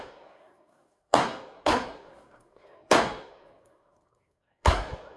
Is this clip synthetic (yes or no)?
yes